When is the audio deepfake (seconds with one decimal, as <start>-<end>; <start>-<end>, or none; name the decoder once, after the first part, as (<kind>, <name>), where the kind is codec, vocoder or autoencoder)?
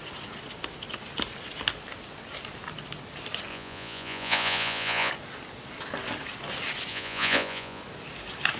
3.5-5.1 (vocoder, Vocos); 6.9-7.8